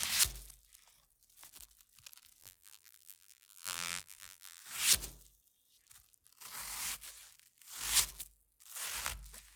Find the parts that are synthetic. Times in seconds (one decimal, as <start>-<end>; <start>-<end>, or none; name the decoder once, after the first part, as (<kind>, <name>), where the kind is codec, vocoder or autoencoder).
2.4-4.6 (vocoder, BigVGAN v2)